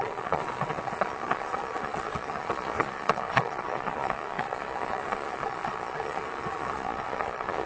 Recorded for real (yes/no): no